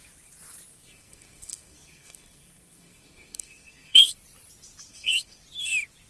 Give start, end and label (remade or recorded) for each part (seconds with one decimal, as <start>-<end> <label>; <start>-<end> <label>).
0.0-0.7 recorded; 0.7-4.1 remade; 4.1-4.9 recorded; 4.9-5.4 remade; 5.4-6.1 recorded